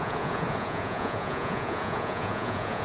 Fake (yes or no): yes